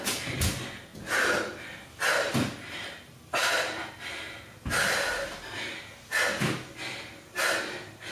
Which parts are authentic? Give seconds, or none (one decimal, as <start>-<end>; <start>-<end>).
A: 0.0-8.1